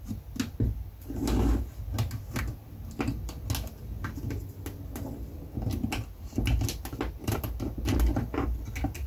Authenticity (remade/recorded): recorded